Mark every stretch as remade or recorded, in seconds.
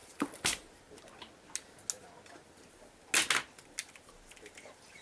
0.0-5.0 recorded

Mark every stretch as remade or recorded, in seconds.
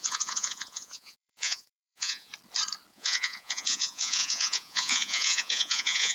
0.0-2.3 remade; 2.3-2.9 recorded; 2.9-6.1 remade